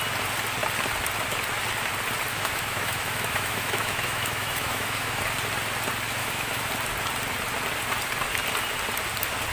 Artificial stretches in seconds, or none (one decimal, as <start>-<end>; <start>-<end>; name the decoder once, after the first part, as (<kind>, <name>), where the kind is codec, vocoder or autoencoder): 2.3-5.2 (autoencoder, DAC-VAE); 6.2-6.7